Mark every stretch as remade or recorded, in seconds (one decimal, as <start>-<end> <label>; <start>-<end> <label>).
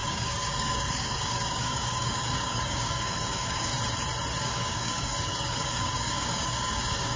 0.0-3.7 remade; 3.7-4.4 recorded; 4.4-7.2 remade